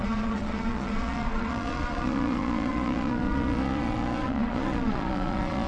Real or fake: fake